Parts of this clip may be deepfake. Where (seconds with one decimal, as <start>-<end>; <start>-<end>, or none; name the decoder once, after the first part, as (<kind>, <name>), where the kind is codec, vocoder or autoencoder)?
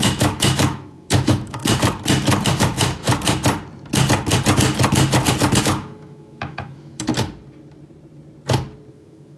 0.0-1.6 (autoencoder, DAC-VAE); 2.6-3.0; 5.6-7.1; 8.9-9.4